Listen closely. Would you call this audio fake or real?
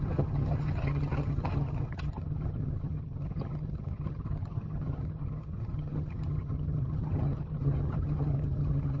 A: fake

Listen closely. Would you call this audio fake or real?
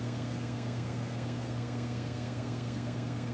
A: fake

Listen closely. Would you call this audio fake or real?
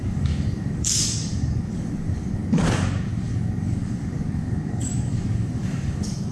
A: fake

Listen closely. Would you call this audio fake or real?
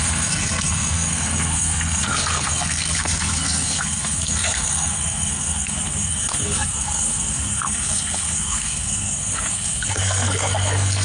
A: fake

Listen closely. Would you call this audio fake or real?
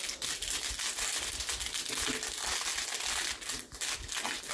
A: real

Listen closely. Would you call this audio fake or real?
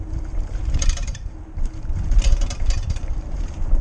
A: fake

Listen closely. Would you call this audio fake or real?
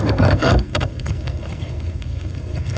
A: fake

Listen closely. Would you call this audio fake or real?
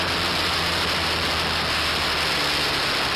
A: real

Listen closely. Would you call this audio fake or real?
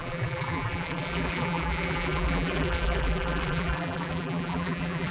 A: fake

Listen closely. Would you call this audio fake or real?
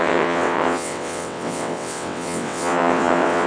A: fake